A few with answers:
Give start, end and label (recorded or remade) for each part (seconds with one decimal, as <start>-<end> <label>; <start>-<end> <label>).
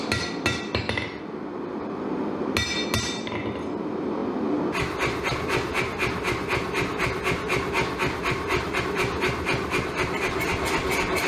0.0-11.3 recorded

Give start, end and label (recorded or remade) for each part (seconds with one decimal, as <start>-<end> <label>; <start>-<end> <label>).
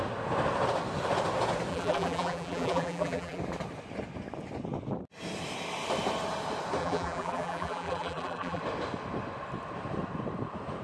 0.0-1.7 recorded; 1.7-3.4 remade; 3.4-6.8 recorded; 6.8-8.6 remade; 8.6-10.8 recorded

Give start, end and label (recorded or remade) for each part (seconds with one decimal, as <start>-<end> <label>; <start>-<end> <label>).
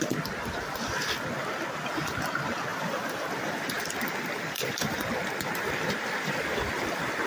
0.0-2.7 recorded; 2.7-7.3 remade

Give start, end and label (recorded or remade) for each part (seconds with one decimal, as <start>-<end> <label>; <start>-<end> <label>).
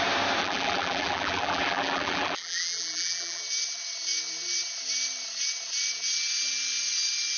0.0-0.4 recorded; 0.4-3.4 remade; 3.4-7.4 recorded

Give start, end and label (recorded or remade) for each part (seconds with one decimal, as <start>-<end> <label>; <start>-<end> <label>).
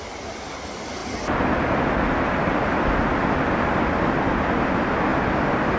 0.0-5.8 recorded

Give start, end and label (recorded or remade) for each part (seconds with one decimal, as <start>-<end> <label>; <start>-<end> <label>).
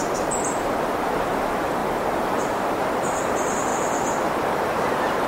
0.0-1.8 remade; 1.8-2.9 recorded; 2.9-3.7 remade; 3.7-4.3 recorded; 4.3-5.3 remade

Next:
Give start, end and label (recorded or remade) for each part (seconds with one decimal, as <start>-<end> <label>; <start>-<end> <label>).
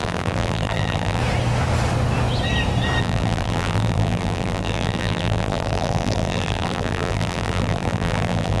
0.0-1.2 remade; 1.2-3.0 recorded; 3.0-8.6 remade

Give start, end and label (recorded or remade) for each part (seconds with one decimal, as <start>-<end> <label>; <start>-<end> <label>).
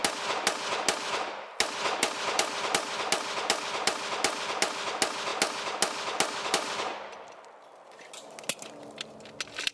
0.0-9.7 recorded